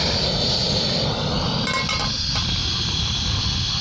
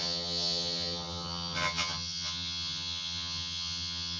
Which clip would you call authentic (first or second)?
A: first